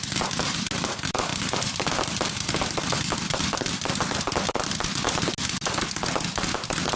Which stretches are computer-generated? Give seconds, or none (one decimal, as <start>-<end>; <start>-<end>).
none